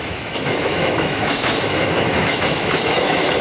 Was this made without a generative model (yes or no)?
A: no